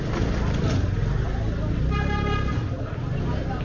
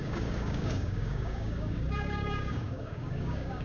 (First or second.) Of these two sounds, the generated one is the second